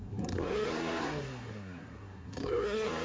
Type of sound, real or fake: fake